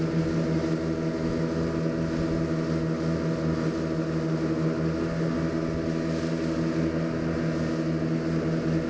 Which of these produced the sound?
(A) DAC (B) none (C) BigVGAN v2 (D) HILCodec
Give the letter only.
B